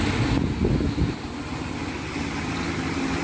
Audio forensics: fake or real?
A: real